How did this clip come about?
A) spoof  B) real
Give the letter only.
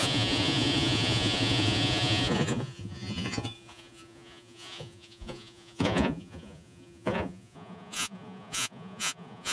A